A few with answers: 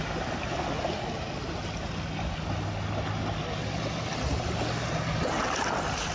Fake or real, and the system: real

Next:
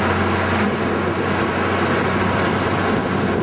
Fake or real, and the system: real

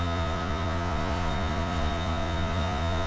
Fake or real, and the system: fake, vocoder, Vocos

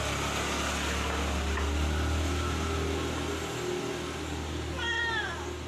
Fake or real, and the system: real